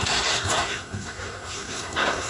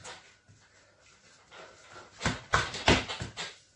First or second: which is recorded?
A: second